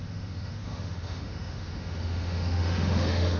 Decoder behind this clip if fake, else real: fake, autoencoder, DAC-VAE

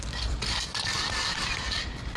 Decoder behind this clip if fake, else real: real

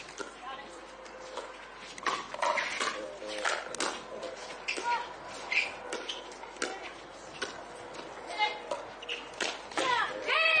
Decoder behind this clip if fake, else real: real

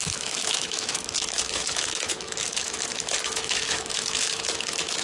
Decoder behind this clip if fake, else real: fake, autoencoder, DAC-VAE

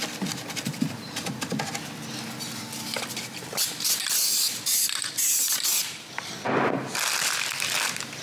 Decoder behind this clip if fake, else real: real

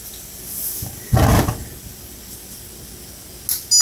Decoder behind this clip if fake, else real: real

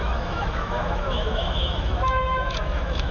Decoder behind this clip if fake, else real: fake, autoencoder, DAC-VAE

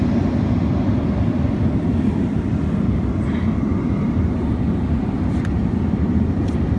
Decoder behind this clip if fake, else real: real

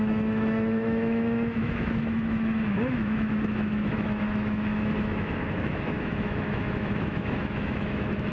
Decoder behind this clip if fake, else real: fake, autoencoder, DAC-VAE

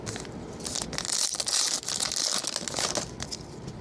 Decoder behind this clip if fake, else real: real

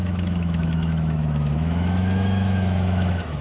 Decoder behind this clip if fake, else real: fake, autoencoder, DAC-VAE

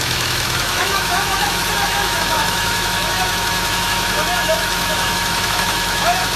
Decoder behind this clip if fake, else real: fake, autoencoder, DAC-VAE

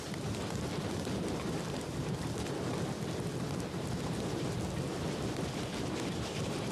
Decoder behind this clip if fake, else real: real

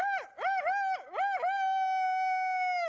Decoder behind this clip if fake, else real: real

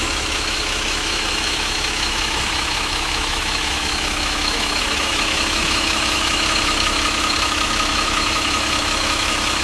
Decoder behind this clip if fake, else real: fake, autoencoder, DAC-VAE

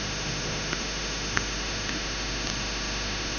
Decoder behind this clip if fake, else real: fake, autoencoder, DAC-VAE